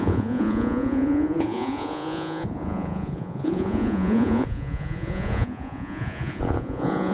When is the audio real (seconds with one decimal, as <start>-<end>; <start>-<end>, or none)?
none